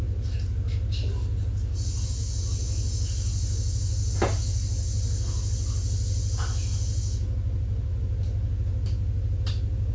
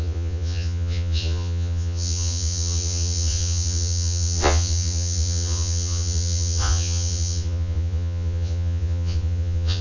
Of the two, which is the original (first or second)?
first